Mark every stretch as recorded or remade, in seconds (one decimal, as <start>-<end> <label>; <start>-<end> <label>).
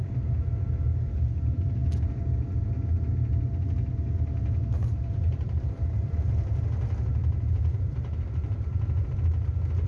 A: 0.0-4.9 recorded; 4.9-6.6 remade; 6.6-7.1 recorded; 7.1-9.2 remade; 9.2-9.9 recorded